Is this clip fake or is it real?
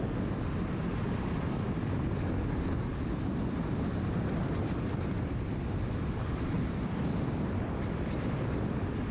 real